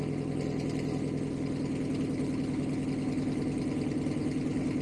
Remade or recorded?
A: recorded